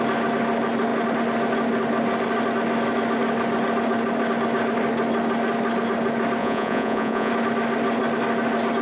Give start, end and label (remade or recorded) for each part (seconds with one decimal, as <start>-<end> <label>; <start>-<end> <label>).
0.0-6.4 recorded; 6.4-7.3 remade; 7.3-8.8 recorded